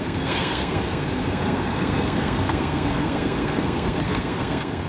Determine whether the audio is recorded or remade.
remade